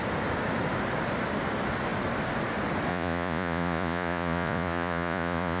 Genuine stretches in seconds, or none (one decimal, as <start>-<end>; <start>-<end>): 0.0-2.9